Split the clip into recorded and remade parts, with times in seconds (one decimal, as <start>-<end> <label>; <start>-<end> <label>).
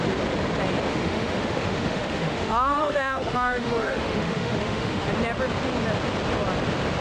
0.0-0.9 recorded; 0.9-5.1 remade; 5.1-7.0 recorded